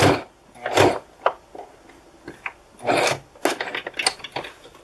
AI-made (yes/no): no